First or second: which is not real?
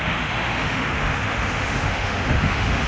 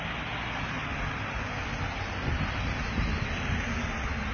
first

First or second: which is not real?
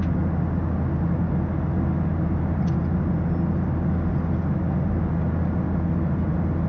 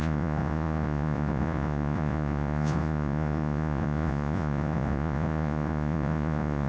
second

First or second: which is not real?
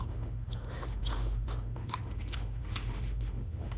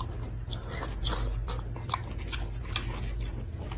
first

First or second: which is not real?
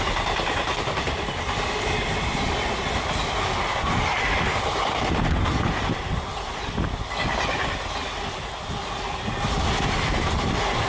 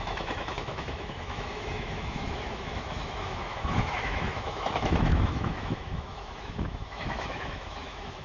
second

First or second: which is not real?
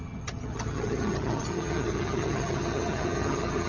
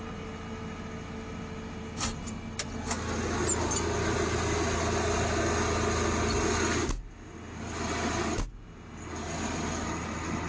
first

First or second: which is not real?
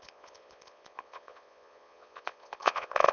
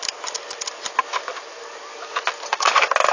first